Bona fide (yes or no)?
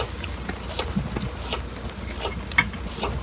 yes